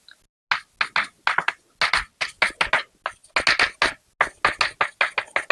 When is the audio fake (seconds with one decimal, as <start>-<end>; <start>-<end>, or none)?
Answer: none